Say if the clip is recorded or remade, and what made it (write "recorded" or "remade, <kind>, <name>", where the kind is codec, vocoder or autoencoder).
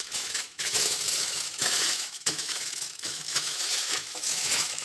remade, autoencoder, DAC-VAE